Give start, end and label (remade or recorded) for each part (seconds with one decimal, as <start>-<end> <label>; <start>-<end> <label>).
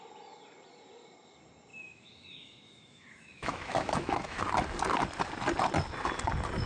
0.0-1.7 recorded; 1.7-4.4 remade; 4.4-6.7 recorded